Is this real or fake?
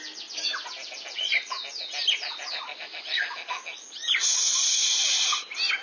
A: real